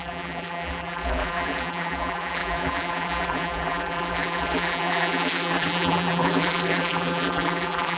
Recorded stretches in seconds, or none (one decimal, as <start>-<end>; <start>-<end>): none